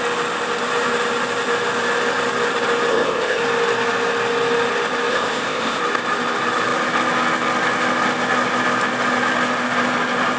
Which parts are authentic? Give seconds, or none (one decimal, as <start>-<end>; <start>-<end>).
0.0-2.9; 3.4-5.1; 5.8-10.4